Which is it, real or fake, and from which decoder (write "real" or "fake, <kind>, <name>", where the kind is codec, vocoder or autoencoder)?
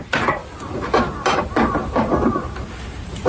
real